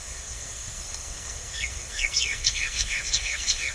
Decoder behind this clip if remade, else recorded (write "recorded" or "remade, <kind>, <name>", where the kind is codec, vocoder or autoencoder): remade, codec, SNAC